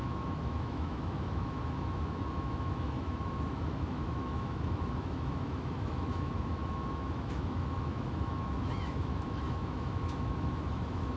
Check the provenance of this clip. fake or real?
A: fake